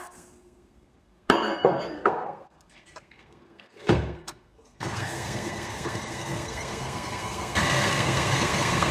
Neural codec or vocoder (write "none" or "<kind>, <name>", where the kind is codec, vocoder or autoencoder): codec, SNAC